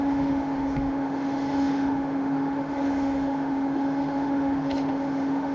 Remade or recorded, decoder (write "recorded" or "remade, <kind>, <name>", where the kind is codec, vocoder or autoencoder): remade, autoencoder, DAC-VAE